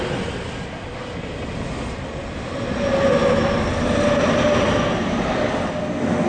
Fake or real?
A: real